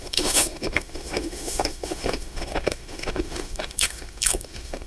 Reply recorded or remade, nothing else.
remade